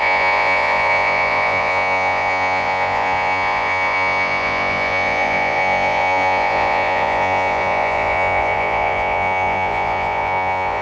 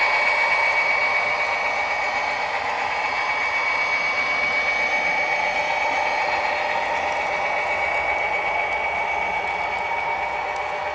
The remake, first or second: first